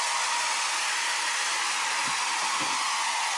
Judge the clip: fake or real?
real